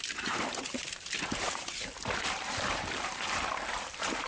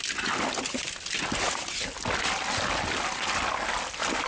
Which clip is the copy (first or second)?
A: first